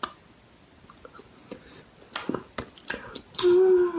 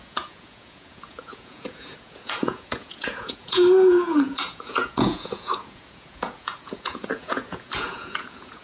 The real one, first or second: first